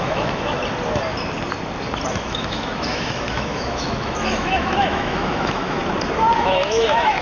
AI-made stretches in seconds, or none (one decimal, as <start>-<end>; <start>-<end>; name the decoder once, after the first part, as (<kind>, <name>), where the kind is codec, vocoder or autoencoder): 0.0-0.6 (autoencoder, DAC-VAE); 2.1-5.8; 6.4-7.2